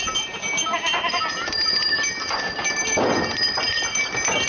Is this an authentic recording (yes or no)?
yes